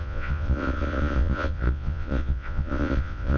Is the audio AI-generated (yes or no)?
yes